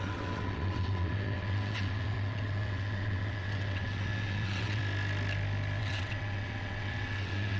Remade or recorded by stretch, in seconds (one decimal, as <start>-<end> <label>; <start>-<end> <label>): 0.0-4.8 remade; 4.8-5.8 recorded; 5.8-7.6 remade